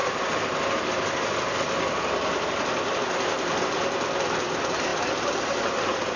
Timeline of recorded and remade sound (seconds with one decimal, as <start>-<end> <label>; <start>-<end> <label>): 0.0-6.2 recorded